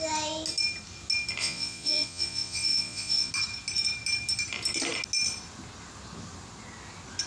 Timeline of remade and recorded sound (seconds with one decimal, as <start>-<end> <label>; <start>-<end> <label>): 0.0-1.4 recorded; 1.4-3.3 remade; 3.3-7.3 recorded